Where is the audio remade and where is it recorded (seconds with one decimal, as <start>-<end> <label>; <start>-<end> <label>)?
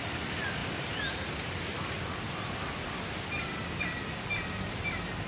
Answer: 0.0-5.3 recorded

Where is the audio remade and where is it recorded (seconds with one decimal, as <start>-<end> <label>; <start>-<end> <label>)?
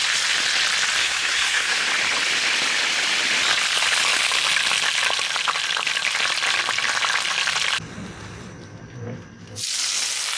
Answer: 0.0-1.0 recorded; 1.0-1.9 remade; 1.9-10.4 recorded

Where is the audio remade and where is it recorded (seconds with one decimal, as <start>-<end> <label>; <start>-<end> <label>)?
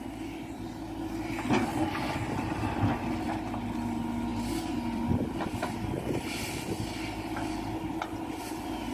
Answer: 0.0-4.3 recorded; 4.3-7.5 remade; 7.5-8.9 recorded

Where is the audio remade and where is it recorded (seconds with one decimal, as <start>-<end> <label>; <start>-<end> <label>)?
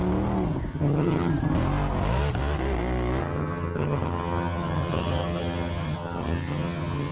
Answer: 0.0-0.7 recorded; 0.7-1.3 remade; 1.3-3.2 recorded; 3.2-7.1 remade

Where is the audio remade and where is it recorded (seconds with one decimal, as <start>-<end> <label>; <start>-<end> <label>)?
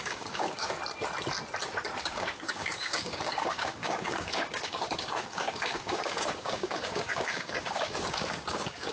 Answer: 0.0-0.8 remade; 0.8-2.0 recorded; 2.0-8.9 remade